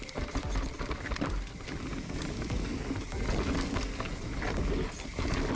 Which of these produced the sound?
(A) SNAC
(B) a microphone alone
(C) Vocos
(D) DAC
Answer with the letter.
B